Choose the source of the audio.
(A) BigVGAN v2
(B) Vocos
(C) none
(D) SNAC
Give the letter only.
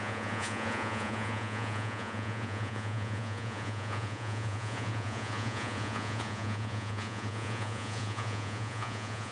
B